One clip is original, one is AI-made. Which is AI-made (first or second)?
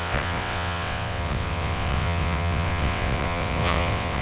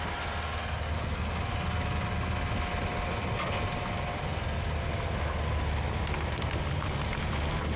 first